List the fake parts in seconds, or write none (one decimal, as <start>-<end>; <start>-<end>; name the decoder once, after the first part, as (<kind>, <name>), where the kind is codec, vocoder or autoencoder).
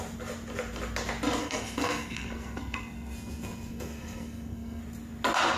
1.4-4.8 (codec, SNAC)